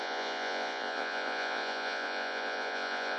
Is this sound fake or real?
fake